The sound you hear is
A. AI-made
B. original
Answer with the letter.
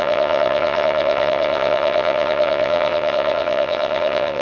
A